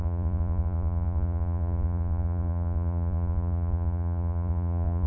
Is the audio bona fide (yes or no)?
no